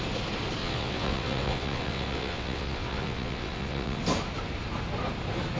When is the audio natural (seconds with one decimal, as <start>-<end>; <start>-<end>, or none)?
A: 0.0-0.6; 4.0-5.6